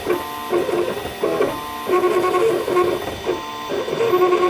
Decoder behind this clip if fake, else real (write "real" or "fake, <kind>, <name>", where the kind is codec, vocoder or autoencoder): real